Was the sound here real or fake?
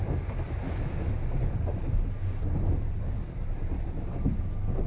real